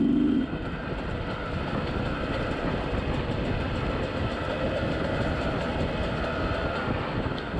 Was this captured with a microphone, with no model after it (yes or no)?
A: yes